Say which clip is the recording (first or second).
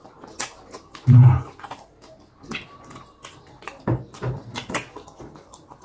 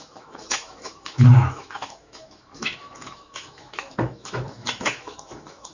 first